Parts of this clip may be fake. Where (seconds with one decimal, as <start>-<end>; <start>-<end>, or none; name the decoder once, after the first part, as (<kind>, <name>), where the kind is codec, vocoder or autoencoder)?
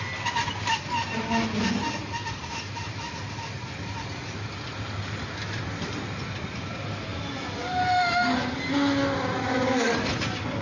none